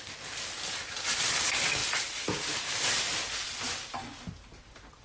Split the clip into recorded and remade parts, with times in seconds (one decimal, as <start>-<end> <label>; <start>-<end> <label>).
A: 0.0-5.0 recorded